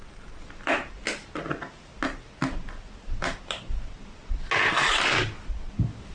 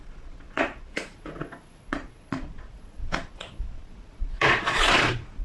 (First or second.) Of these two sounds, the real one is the first